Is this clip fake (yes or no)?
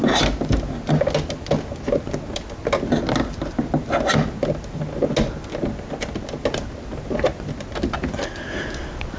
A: no